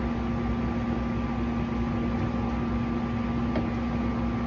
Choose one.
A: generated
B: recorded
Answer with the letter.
B